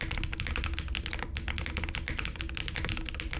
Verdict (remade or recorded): recorded